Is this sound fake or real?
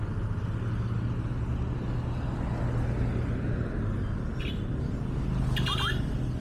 real